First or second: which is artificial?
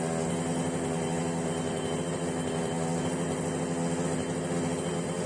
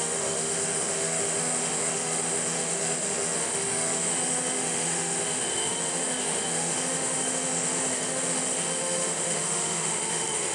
second